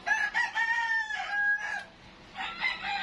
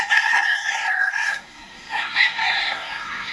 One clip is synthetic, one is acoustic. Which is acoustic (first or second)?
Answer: first